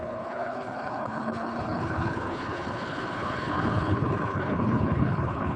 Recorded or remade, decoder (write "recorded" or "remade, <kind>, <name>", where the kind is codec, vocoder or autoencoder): remade, codec, HILCodec